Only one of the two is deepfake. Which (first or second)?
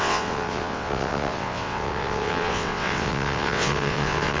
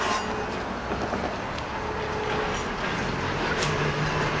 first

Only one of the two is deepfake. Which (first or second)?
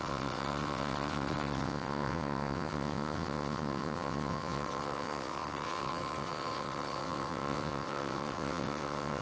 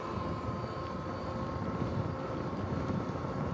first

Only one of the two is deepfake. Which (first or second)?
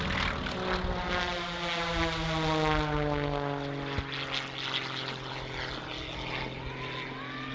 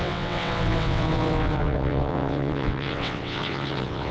second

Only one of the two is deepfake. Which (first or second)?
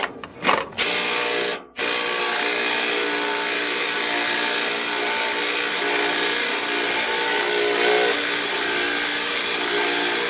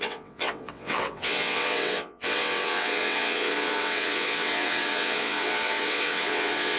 second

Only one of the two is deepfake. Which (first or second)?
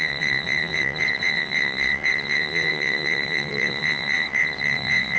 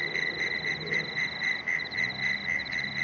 first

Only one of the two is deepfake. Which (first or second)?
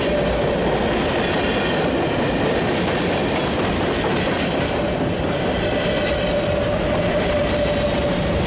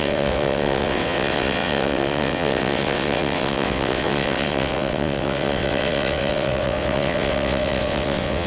second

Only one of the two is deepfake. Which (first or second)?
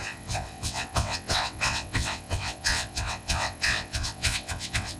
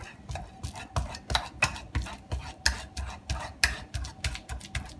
first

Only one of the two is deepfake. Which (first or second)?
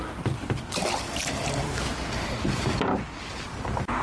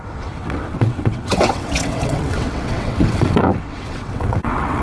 second